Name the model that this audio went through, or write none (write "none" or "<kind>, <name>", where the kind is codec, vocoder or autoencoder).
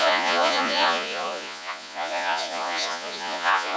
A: vocoder, Vocos